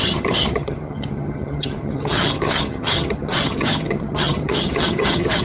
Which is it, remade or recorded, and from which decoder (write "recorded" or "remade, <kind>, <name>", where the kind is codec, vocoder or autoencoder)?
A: remade, vocoder, HiFi-GAN